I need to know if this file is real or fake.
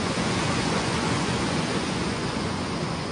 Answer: fake